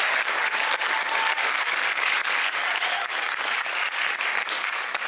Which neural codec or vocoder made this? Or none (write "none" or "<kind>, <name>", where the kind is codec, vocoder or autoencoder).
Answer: codec, DAC